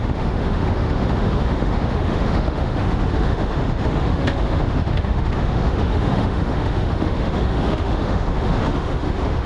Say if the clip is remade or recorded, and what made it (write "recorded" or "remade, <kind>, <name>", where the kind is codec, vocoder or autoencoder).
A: remade, autoencoder, DAC-VAE